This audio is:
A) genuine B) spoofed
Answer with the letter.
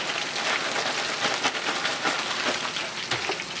A